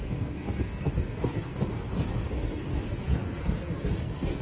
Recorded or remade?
remade